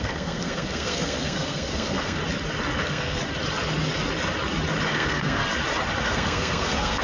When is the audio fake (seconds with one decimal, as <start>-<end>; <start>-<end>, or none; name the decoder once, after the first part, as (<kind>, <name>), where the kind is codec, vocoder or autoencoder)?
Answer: 0.0-2.2 (codec, SNAC); 2.8-3.2; 4.9-5.4; 6.0-7.0